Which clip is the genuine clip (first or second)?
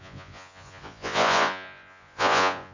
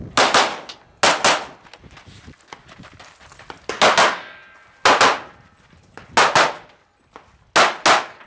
second